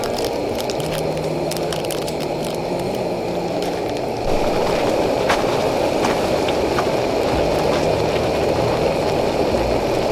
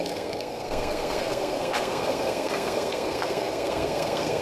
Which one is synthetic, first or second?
second